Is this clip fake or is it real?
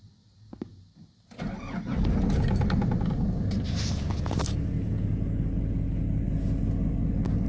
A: real